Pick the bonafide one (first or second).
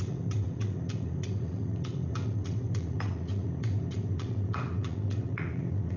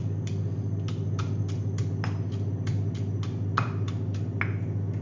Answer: second